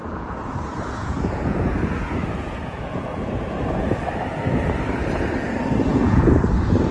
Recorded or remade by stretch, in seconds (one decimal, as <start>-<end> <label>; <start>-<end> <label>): 0.0-3.3 remade; 3.3-5.9 recorded; 5.9-6.4 remade; 6.4-6.9 recorded